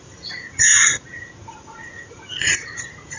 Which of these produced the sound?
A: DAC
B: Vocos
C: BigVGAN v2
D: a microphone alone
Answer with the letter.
B